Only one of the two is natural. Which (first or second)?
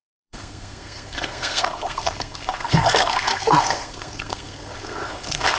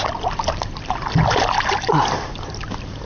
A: second